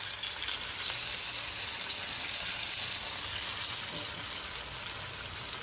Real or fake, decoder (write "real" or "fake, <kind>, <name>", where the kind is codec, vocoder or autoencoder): real